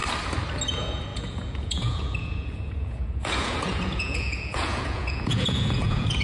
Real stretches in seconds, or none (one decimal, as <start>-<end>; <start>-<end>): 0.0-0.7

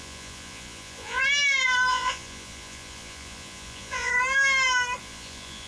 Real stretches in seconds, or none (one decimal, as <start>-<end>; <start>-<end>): 1.2-1.9; 4.1-5.0

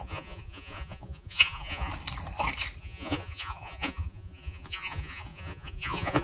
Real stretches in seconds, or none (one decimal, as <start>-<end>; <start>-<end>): 1.9-2.8

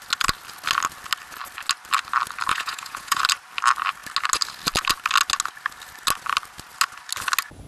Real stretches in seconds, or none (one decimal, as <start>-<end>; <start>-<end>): 0.0-2.5; 3.2-7.7

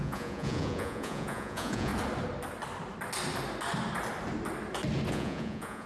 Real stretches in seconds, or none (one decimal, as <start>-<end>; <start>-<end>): 1.9-5.1

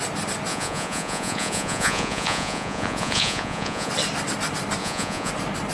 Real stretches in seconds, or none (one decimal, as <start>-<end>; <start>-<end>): 0.0-0.5; 3.9-4.8; 5.3-5.7

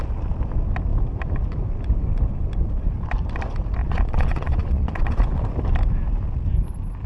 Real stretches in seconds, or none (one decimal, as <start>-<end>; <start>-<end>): 0.0-3.8; 5.2-7.1

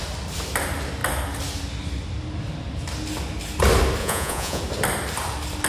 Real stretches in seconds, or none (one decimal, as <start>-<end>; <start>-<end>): 0.0-4.0; 4.6-5.7